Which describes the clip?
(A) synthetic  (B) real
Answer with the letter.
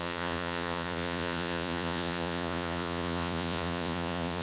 A